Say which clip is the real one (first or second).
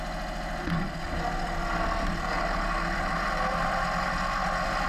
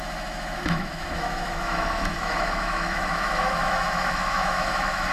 first